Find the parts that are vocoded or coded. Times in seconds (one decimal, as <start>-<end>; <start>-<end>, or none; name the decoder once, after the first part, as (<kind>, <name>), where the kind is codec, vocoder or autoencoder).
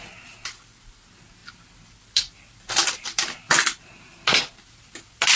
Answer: 0.0-5.4 (vocoder, BigVGAN v2)